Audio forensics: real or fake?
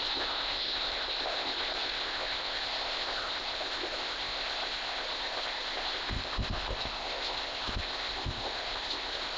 fake